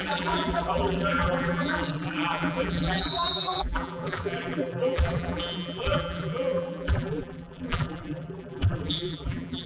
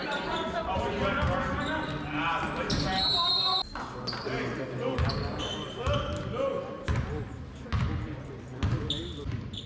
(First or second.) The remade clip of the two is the first